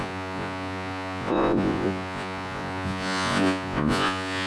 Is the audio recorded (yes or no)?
no